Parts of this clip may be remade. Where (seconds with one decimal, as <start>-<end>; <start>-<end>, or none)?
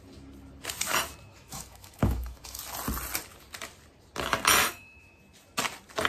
1.3-2.6; 4.6-5.2